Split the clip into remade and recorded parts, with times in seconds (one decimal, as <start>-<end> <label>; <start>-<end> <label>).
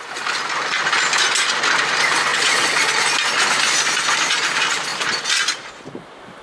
0.0-2.3 recorded; 2.3-2.9 remade; 2.9-6.4 recorded